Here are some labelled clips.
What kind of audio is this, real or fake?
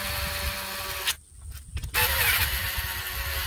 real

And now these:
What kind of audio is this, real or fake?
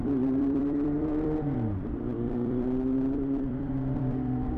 fake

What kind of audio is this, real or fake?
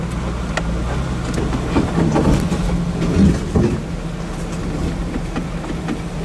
real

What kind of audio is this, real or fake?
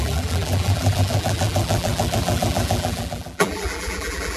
fake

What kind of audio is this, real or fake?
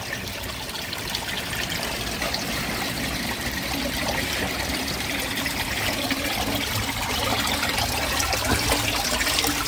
real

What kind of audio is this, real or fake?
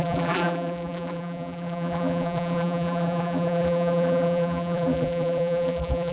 fake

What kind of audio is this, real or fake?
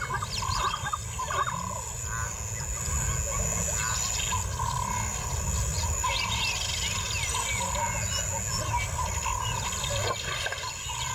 real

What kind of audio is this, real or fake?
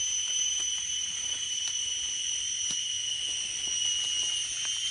real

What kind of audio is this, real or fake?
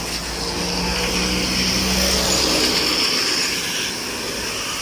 real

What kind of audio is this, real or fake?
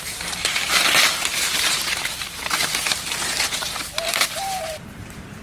fake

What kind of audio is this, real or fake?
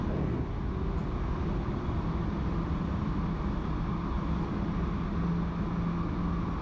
real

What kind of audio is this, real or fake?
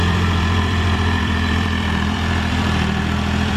fake